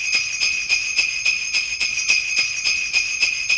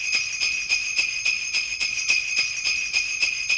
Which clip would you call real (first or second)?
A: first